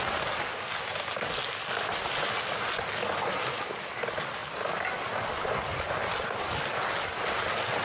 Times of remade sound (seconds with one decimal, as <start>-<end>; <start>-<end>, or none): none